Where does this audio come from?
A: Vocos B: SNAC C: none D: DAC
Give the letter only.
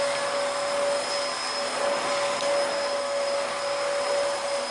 C